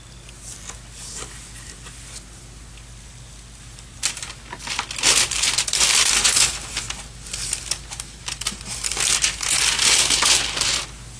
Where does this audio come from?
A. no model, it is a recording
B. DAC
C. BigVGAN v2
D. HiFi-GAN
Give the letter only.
A